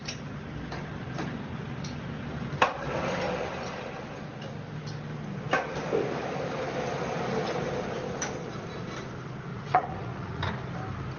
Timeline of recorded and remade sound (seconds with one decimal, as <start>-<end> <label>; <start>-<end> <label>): 0.0-9.5 recorded; 9.5-10.5 remade; 10.5-11.2 recorded